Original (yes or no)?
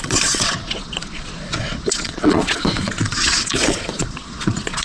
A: no